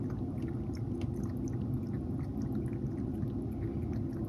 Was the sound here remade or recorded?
recorded